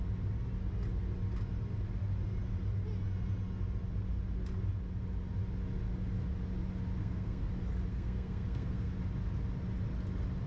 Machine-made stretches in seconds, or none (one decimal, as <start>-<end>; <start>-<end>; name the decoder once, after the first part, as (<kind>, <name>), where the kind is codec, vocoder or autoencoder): 7.0-7.5 (codec, SNAC); 7.9-8.9